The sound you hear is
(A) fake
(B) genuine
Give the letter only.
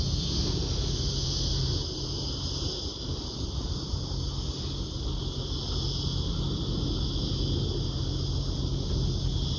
B